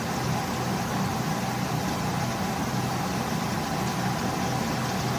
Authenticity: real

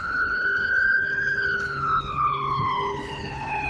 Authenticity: fake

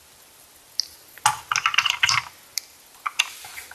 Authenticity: real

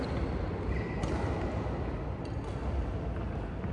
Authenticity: real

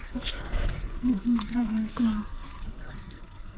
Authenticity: fake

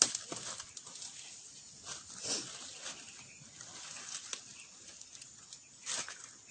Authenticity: real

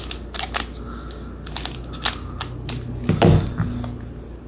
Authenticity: real